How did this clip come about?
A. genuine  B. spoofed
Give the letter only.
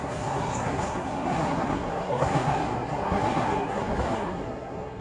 B